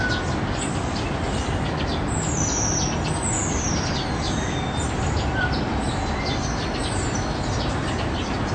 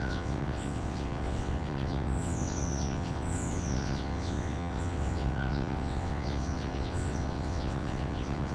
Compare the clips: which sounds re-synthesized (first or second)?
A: second